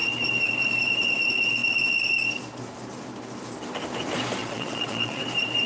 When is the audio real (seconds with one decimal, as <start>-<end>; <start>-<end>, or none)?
0.0-4.4; 5.2-5.7